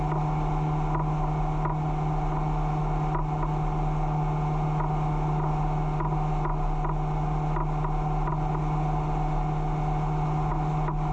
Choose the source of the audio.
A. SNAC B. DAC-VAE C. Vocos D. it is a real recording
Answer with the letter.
D